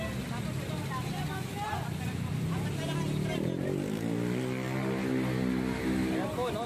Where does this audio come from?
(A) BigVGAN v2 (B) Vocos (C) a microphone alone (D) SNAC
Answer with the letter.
C